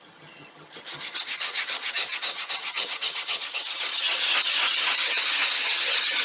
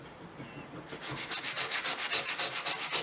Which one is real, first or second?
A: second